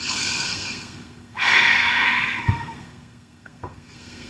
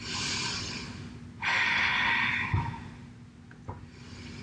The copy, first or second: first